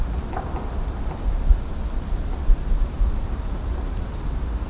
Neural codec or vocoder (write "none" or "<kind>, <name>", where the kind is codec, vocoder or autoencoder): none